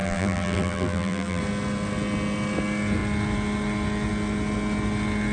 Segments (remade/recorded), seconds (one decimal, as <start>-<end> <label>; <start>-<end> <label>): 0.0-1.4 remade; 1.4-5.3 recorded